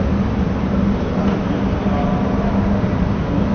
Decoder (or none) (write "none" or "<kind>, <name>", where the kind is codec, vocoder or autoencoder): none